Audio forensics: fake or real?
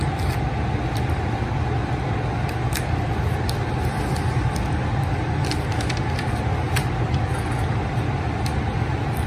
real